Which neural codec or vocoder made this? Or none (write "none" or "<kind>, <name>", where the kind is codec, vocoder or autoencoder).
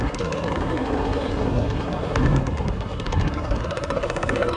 codec, SNAC